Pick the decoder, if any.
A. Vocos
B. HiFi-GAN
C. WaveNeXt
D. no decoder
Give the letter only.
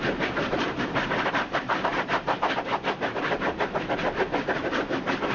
D